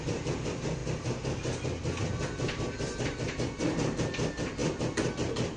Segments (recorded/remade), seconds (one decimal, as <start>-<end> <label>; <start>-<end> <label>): 0.0-0.8 remade; 0.8-2.0 recorded; 2.0-4.6 remade; 4.6-5.6 recorded